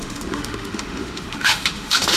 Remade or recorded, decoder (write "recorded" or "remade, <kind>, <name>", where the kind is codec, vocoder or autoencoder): remade, autoencoder, DAC-VAE